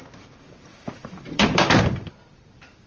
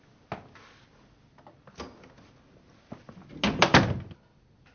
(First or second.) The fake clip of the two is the first